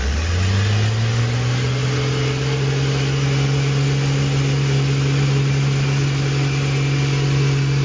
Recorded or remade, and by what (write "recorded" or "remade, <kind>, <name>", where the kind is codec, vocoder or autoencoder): recorded